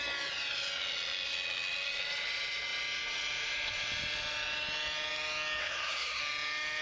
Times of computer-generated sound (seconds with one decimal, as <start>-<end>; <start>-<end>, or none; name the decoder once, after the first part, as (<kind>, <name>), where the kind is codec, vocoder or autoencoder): 5.6-6.2 (codec, SNAC)